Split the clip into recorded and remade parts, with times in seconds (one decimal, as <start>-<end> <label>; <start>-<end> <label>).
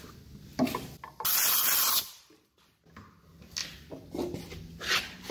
0.0-5.3 recorded